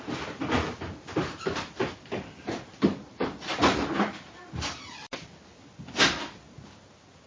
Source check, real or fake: real